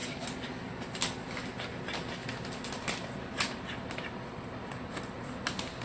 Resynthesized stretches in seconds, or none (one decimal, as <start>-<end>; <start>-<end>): none